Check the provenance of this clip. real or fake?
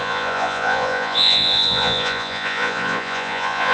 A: fake